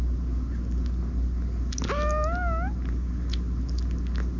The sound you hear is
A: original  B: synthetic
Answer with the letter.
A